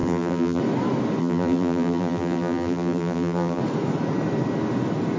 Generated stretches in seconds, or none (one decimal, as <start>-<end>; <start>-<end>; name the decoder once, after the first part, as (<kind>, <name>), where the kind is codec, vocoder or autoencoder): 0.0-0.6 (vocoder, BigVGAN v2); 1.2-3.6